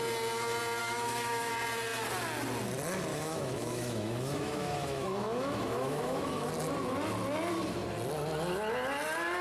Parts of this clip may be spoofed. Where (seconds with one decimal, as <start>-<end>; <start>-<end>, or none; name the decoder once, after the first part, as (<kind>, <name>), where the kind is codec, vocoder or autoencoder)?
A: 0.8-1.5 (autoencoder, DAC-VAE); 3.1-6.5